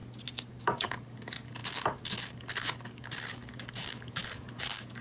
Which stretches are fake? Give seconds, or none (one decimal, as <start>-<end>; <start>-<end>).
0.5-5.0